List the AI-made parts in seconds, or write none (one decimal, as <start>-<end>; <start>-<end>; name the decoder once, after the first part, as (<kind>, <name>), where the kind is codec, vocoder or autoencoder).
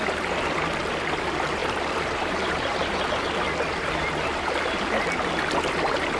1.6-4.8 (vocoder, BigVGAN v2)